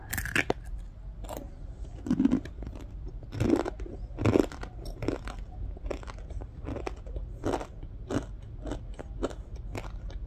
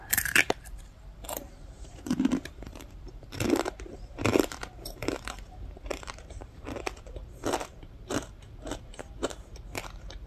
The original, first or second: first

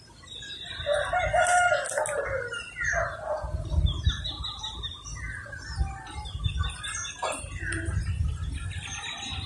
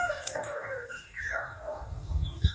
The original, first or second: first